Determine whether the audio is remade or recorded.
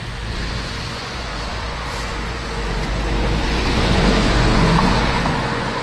remade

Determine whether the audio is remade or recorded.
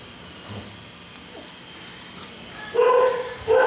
recorded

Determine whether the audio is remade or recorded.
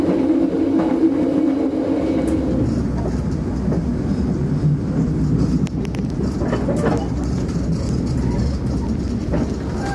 recorded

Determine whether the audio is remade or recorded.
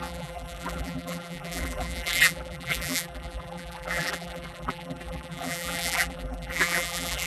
remade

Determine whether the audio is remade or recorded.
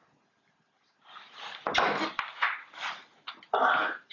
recorded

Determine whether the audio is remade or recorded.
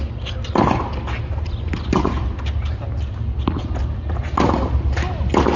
recorded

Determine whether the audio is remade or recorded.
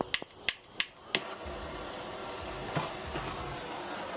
recorded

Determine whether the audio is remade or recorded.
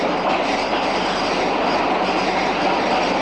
recorded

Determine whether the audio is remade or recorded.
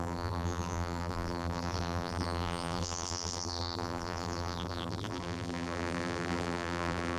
remade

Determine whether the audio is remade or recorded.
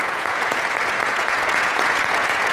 remade